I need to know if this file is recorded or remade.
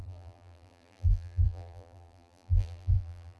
remade